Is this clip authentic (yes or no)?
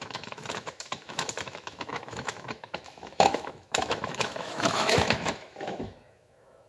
no